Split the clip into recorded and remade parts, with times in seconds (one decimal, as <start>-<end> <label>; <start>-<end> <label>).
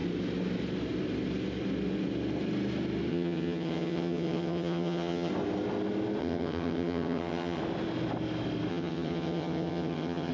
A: 0.0-3.1 recorded; 3.1-5.3 remade; 5.3-6.2 recorded; 6.2-7.6 remade; 7.6-8.7 recorded; 8.7-10.3 remade